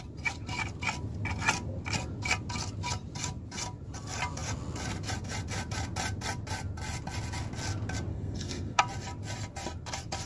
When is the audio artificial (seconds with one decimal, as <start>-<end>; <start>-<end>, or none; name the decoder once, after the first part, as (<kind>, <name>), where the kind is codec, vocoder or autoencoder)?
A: 8.1-8.8 (codec, SNAC)